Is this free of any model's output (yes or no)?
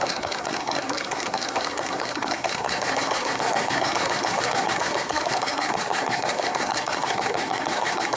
no